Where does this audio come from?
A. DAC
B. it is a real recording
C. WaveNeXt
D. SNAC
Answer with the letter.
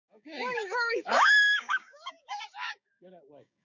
A